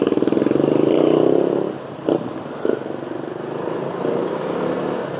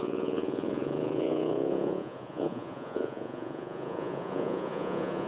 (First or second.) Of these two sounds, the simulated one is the second